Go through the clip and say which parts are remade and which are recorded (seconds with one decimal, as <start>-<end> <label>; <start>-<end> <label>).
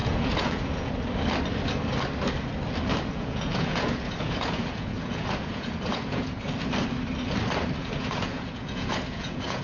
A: 0.0-0.9 remade; 0.9-2.9 recorded; 2.9-6.5 remade; 6.5-7.8 recorded; 7.8-9.6 remade